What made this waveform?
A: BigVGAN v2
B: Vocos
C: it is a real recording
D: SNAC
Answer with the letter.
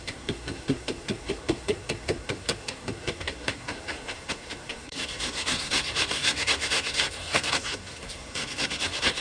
D